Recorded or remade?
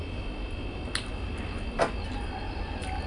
recorded